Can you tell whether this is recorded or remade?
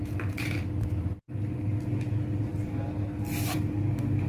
recorded